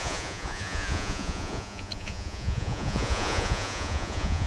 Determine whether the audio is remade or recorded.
remade